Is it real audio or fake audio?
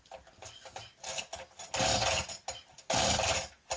real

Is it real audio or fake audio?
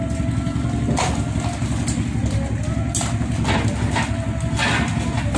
real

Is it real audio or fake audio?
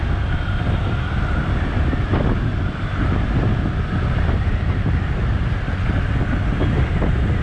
real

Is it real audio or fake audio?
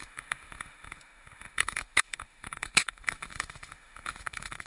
fake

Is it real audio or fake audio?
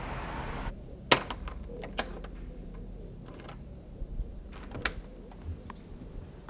real